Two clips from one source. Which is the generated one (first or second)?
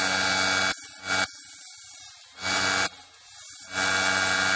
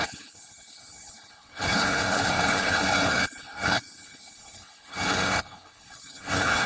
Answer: second